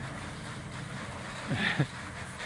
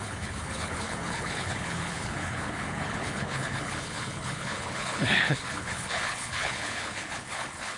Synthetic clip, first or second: second